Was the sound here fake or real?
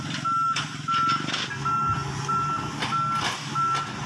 real